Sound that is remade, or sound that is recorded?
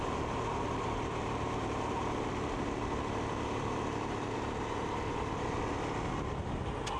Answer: recorded